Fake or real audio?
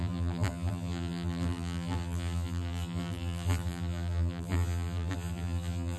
fake